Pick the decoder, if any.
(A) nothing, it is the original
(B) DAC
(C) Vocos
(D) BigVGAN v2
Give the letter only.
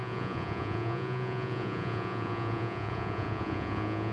C